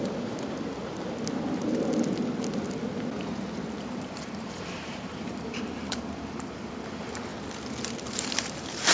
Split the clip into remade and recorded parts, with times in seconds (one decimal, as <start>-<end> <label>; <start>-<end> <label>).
0.0-3.8 recorded; 3.8-7.3 remade; 7.3-8.3 recorded; 8.3-8.9 remade